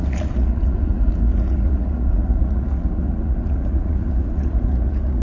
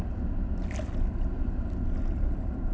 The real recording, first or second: second